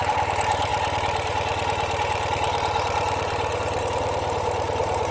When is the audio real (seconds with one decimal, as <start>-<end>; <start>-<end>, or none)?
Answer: none